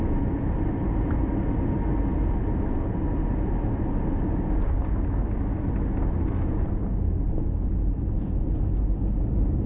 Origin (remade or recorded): recorded